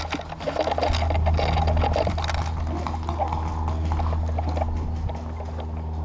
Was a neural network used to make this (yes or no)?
no